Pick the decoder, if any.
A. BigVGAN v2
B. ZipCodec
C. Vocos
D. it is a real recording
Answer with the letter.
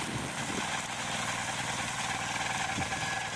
D